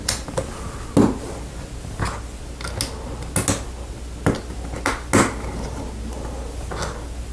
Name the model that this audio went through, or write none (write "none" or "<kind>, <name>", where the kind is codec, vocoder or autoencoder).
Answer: none